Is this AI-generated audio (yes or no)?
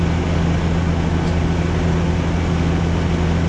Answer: no